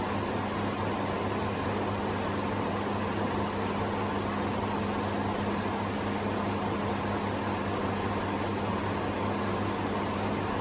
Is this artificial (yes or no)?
no